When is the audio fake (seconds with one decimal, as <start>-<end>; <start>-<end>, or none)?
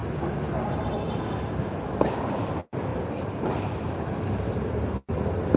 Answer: 0.0-1.3; 2.9-5.1